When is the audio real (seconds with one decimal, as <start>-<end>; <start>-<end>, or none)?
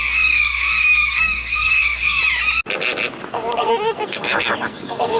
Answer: 2.2-3.3